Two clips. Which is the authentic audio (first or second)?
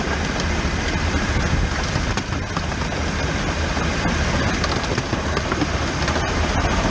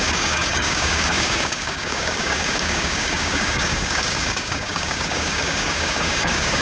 first